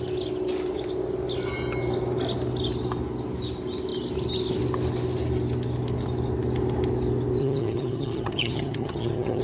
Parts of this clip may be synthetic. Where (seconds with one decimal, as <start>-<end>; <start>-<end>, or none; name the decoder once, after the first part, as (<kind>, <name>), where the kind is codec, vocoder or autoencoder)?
7.4-9.4 (vocoder, HiFi-GAN)